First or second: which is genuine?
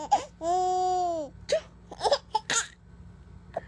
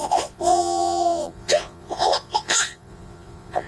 first